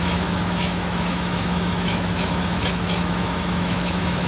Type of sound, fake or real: fake